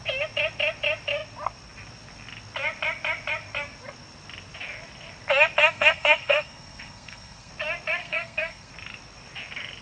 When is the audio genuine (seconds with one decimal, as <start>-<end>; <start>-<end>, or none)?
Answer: 0.0-5.6; 7.5-8.0; 8.7-9.8

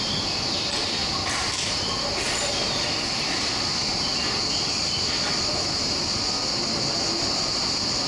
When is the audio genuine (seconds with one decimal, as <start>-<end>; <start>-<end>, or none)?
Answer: 0.0-8.1

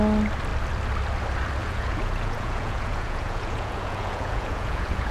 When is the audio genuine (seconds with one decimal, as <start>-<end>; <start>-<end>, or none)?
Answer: 0.0-1.6